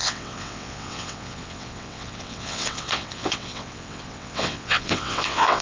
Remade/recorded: remade